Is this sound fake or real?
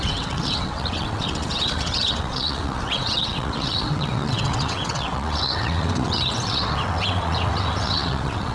fake